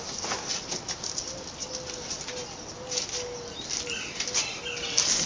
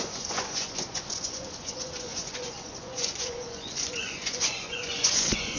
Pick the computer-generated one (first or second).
second